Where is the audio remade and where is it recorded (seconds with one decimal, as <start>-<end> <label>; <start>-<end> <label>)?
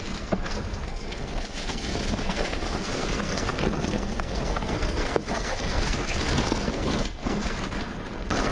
0.0-8.5 remade